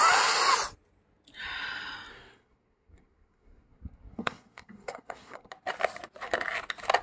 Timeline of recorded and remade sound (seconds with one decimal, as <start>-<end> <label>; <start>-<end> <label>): 0.0-2.1 recorded; 2.1-5.5 remade; 5.5-7.0 recorded